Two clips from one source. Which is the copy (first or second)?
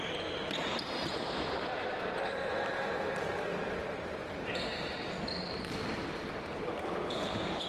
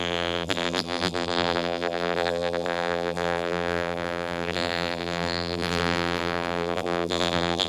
second